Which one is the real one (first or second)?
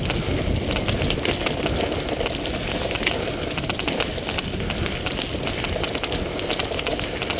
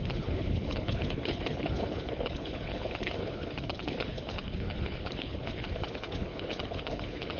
first